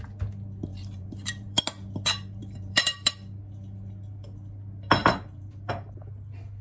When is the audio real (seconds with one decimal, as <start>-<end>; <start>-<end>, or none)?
0.0-0.7; 1.6-2.4; 3.1-5.0; 5.7-6.6